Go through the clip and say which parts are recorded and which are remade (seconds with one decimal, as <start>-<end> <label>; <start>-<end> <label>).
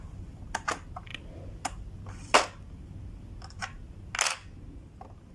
0.0-5.3 recorded